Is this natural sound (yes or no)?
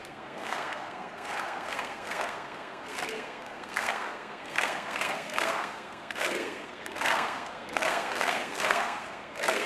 no